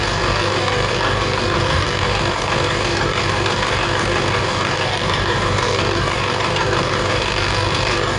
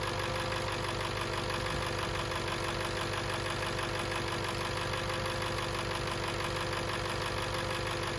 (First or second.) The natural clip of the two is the second